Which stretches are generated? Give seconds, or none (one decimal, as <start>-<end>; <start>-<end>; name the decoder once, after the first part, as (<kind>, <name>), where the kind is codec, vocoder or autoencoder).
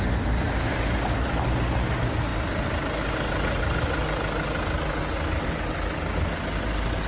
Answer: none